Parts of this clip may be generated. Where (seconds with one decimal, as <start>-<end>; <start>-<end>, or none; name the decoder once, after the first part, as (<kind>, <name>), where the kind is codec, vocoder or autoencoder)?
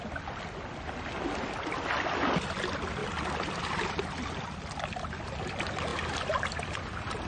none